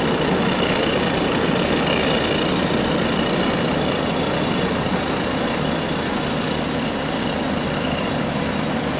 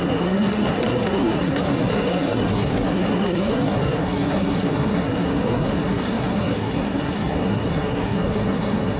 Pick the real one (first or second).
first